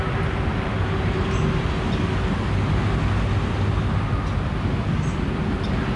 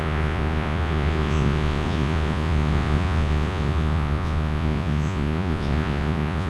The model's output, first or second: second